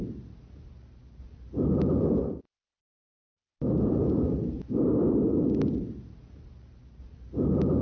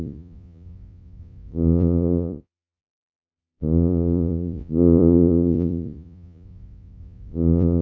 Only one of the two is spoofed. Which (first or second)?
second